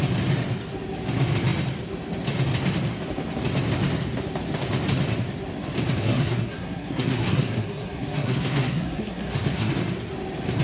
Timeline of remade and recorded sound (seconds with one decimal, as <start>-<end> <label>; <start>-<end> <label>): 0.0-6.0 recorded; 6.0-9.7 remade; 9.7-10.6 recorded